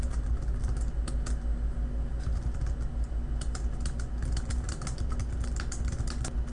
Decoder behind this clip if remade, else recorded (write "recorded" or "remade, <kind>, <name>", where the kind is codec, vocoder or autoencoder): recorded